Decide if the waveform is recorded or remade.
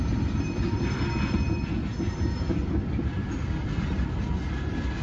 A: recorded